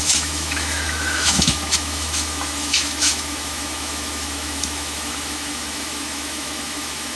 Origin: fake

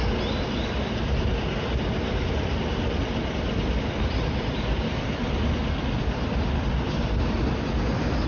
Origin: real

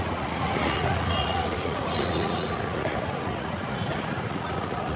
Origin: fake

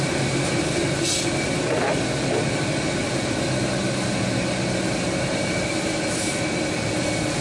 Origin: real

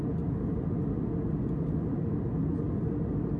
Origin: real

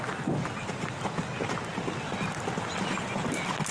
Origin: real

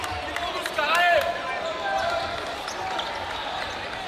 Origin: real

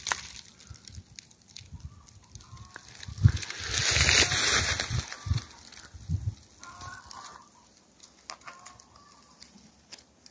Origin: real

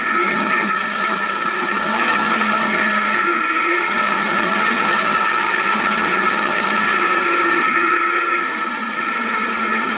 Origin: fake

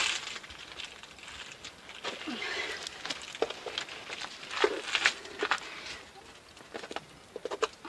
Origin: real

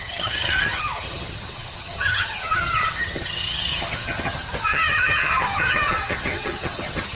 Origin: fake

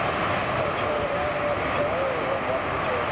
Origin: real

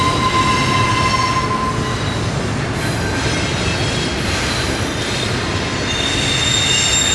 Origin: real